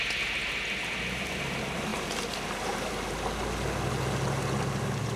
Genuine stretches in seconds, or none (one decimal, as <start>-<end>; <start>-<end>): 0.0-5.2